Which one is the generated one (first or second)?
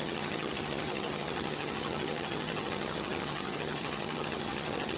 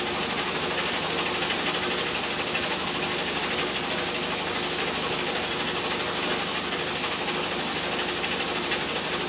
first